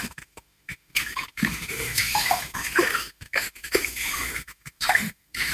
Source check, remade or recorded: remade